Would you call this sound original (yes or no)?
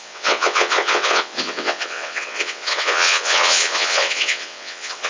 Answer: no